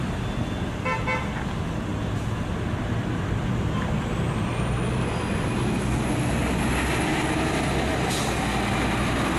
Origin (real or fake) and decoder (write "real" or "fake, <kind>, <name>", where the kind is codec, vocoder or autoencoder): real